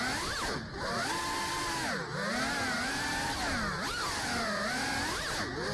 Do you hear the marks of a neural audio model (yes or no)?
no